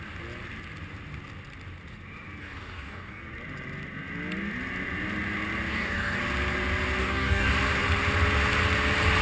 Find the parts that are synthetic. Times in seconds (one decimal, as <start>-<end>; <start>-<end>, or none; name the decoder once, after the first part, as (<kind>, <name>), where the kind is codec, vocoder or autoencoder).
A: 2.4-3.2 (codec, DAC); 5.7-6.2; 7.0-7.5